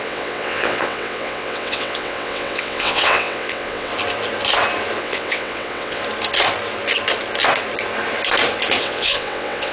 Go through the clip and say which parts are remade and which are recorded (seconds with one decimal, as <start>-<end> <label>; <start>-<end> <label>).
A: 0.0-3.9 remade; 3.9-5.0 recorded; 5.0-6.0 remade; 6.0-8.8 recorded; 8.8-9.7 remade